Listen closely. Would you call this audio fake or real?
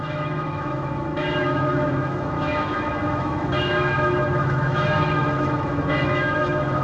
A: fake